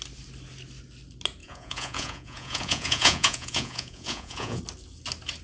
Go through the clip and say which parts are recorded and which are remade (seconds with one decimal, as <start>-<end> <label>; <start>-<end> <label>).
0.0-1.4 recorded; 1.4-4.6 remade; 4.6-5.4 recorded